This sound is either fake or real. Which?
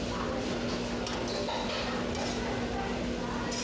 real